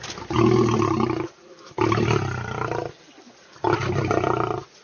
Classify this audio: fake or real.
real